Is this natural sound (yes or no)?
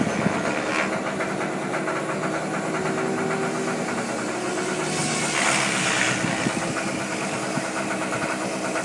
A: yes